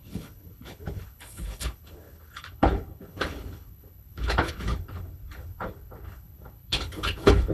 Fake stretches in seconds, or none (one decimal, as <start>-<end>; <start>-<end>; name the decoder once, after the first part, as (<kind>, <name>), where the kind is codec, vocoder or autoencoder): 0.0-7.5 (codec, HILCodec)